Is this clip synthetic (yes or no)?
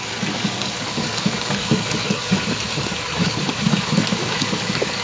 yes